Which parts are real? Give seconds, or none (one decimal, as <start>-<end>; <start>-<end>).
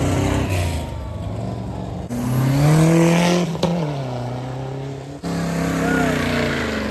0.0-6.9